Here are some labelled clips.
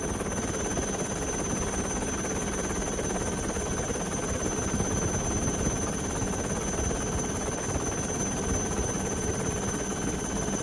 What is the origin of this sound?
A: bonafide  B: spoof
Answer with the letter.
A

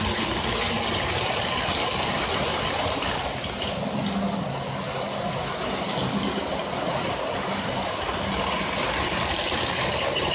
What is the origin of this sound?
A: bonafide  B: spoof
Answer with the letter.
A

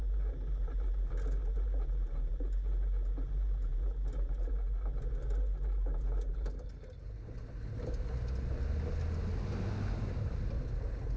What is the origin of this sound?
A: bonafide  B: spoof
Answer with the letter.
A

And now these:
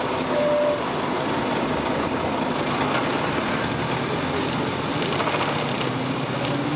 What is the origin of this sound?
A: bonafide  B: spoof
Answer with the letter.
A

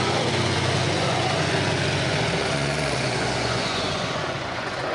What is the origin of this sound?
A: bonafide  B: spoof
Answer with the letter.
B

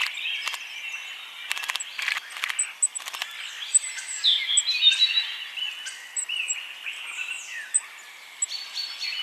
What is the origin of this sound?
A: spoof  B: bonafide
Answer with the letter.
B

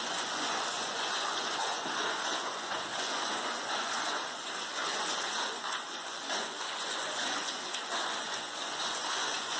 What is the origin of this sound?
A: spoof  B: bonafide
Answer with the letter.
A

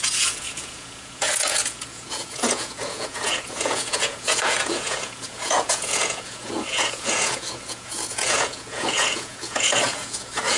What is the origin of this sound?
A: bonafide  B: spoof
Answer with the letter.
B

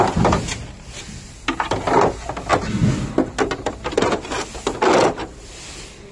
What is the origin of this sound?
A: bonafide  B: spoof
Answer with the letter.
A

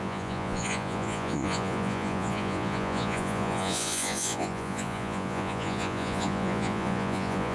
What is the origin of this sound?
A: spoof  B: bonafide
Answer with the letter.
A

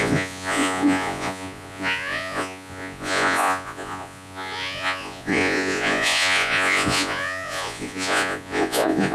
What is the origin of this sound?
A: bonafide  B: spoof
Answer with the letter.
B